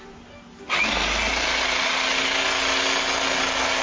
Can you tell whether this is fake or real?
real